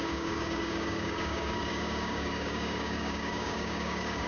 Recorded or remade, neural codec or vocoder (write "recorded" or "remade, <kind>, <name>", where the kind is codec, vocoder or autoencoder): remade, codec, DAC